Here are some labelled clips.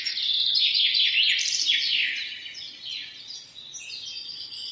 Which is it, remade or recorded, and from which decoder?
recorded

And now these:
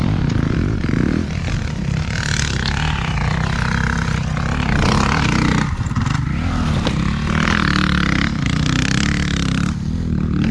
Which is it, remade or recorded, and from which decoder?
recorded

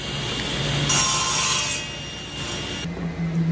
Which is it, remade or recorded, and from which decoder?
recorded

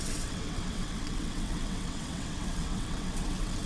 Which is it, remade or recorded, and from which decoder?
remade, vocoder, WaveNeXt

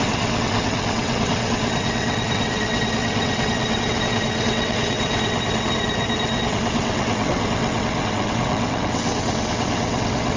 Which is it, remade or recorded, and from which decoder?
remade, vocoder, WaveNeXt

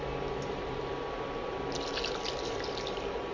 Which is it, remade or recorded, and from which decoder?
recorded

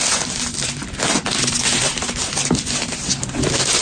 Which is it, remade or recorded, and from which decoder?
recorded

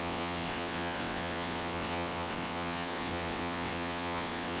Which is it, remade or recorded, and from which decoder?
remade, vocoder, WaveNeXt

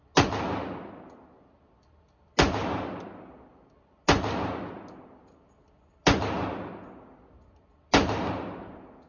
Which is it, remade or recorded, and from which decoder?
recorded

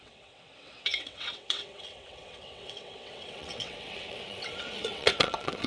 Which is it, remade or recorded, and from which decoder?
remade, vocoder, WaveNeXt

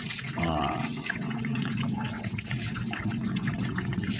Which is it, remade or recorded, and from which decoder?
remade, vocoder, WaveNeXt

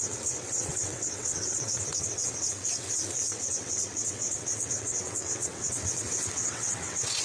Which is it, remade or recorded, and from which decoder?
remade, vocoder, WaveNeXt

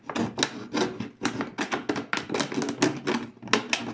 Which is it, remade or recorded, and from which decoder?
recorded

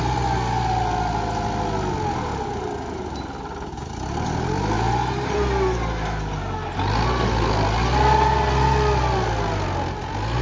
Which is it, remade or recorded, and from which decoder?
recorded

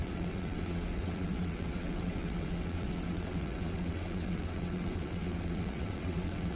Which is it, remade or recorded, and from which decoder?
remade, vocoder, WaveNeXt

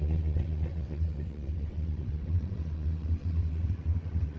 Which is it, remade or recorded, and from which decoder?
remade, vocoder, WaveNeXt